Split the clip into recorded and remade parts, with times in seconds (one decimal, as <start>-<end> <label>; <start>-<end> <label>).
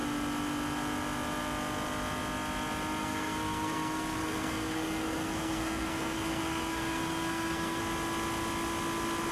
0.0-3.0 recorded; 3.0-7.8 remade; 7.8-9.3 recorded